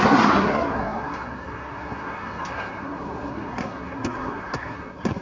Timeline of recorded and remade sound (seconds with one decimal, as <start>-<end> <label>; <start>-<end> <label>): 0.0-5.2 remade